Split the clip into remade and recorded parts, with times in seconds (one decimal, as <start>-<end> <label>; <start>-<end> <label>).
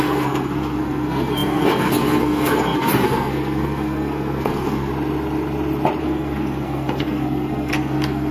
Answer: 0.0-4.9 remade; 4.9-6.0 recorded; 6.0-8.3 remade